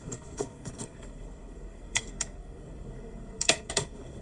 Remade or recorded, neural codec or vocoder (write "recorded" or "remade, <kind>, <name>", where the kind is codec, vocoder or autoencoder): remade, codec, SNAC